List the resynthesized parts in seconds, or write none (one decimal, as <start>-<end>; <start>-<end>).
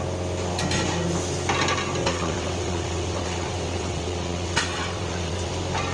2.0-5.5